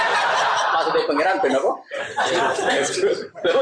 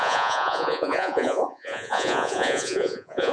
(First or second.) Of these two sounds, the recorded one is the first